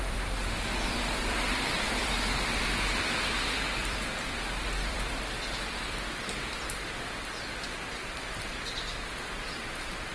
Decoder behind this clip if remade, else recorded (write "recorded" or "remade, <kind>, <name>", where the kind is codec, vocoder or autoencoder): remade, vocoder, BigVGAN v2